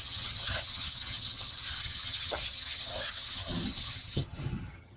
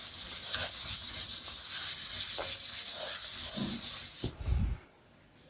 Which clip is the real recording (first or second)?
second